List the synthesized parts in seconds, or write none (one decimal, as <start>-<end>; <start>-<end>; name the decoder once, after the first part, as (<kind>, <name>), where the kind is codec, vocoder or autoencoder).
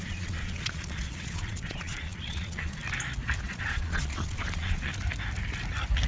0.0-2.8 (vocoder, Vocos); 3.4-4.9